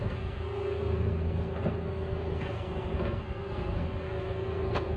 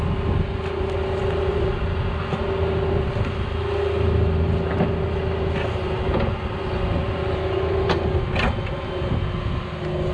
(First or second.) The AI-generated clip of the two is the first